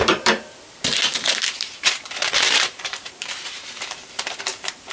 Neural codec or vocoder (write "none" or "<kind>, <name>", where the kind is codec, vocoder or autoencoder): vocoder, BigVGAN v2